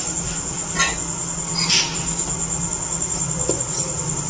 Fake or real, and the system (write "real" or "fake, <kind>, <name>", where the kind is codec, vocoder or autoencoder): real